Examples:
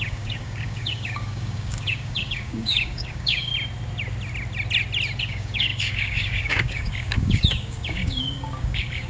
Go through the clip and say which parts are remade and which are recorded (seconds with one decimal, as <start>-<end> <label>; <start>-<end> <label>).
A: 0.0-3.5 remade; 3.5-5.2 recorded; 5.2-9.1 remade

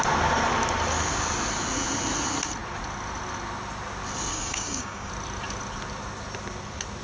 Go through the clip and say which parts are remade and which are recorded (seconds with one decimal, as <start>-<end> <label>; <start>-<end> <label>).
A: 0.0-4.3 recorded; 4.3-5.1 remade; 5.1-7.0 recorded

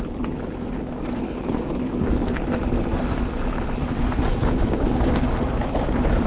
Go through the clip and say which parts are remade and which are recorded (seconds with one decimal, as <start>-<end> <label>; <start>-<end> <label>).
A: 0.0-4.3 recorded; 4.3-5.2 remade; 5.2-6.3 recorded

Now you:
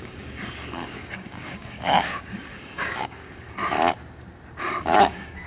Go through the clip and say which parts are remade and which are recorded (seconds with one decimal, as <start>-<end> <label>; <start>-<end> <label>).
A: 0.0-3.6 remade; 3.6-4.6 recorded; 4.6-5.5 remade

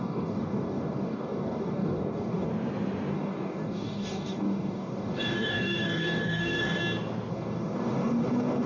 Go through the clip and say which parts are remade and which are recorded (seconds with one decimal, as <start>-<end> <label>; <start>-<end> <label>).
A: 0.0-2.5 remade; 2.5-3.1 recorded; 3.1-6.8 remade; 6.8-7.3 recorded; 7.3-8.7 remade